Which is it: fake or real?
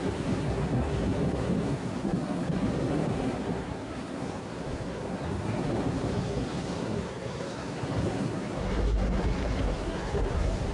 fake